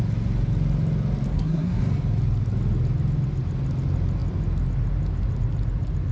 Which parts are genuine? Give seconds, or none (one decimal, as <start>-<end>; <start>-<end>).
0.0-1.3; 1.8-6.1